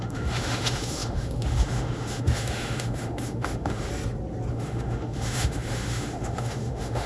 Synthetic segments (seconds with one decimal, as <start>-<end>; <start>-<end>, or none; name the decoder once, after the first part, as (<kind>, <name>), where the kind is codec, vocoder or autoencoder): 0.0-3.9 (autoencoder, DAC-VAE); 4.5-7.1